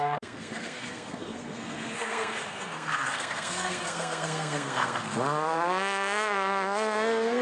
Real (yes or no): no